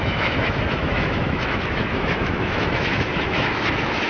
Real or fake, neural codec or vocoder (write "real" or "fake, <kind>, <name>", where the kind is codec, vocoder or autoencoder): fake, autoencoder, DAC-VAE